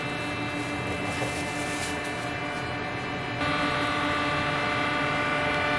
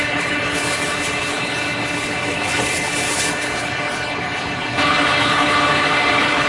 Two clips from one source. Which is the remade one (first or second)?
second